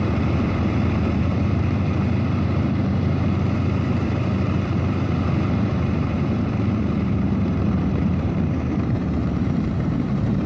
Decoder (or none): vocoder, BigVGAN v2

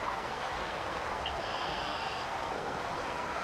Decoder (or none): codec, SNAC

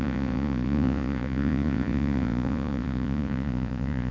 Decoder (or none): vocoder, Vocos